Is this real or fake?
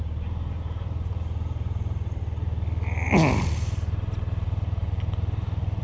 real